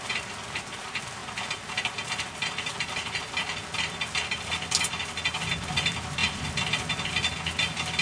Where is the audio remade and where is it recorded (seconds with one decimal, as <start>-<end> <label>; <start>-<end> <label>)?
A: 0.0-8.0 recorded